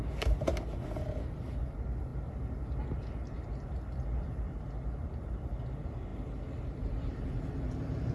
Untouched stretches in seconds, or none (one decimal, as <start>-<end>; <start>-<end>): 0.0-8.1